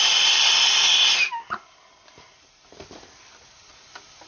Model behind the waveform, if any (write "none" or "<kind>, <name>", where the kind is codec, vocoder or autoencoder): none